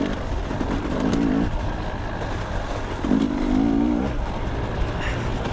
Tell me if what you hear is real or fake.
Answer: real